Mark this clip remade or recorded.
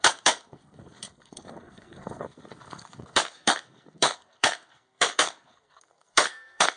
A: remade